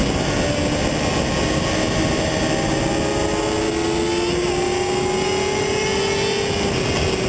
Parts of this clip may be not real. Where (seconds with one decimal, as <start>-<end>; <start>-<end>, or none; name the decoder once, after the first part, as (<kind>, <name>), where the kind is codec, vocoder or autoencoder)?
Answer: none